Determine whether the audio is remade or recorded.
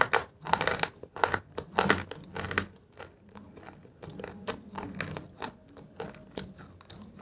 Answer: recorded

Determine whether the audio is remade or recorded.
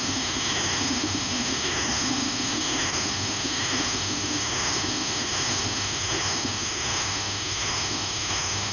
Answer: remade